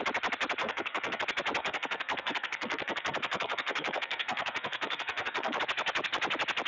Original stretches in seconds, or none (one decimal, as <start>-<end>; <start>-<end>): 0.0-0.6; 1.2-1.6; 5.6-6.7